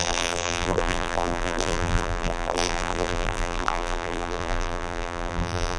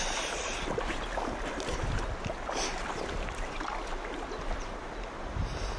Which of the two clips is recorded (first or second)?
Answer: second